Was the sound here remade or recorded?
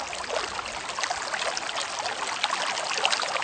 recorded